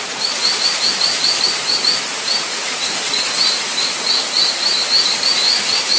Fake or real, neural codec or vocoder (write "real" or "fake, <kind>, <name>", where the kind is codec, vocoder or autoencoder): fake, vocoder, BigVGAN v2